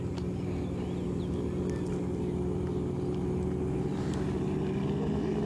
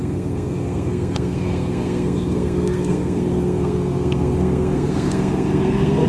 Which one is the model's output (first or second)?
second